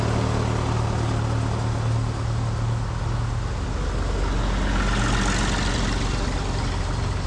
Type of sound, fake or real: real